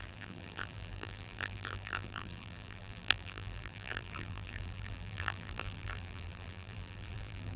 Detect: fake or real fake